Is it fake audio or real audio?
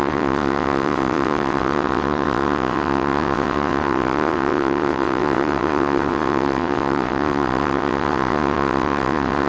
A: fake